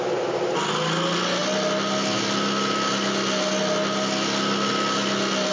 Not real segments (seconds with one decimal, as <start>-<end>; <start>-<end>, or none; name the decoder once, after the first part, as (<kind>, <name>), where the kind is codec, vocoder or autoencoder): none